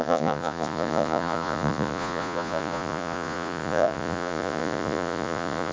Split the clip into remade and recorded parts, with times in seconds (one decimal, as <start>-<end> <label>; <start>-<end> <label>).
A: 0.0-5.7 remade